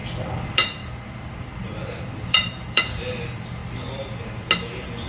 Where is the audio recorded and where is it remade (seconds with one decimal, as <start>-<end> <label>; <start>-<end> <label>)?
0.0-3.1 remade; 3.1-5.1 recorded